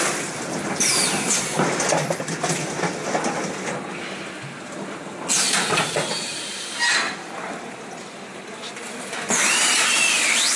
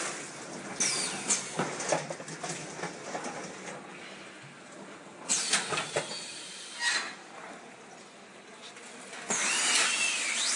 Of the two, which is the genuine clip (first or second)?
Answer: second